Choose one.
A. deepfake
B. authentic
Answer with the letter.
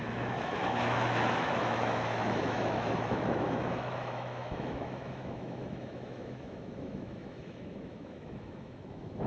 A